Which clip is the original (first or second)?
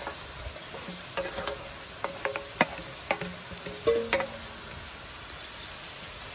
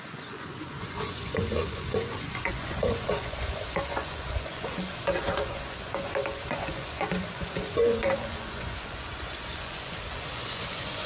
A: first